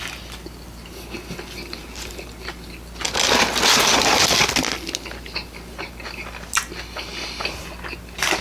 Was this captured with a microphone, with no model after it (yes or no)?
yes